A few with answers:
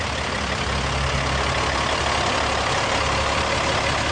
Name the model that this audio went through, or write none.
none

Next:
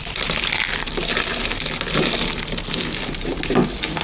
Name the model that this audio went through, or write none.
none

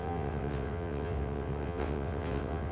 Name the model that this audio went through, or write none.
vocoder, WaveNeXt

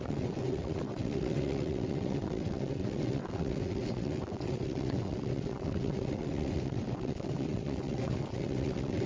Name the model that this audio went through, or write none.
vocoder, WaveNeXt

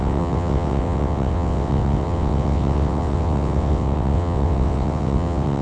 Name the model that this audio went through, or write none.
vocoder, WaveNeXt